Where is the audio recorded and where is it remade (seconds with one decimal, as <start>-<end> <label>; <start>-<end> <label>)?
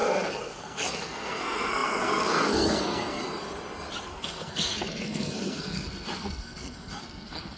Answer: 0.0-3.2 remade; 3.2-4.1 recorded; 4.1-7.6 remade